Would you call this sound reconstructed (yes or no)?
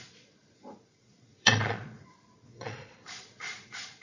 yes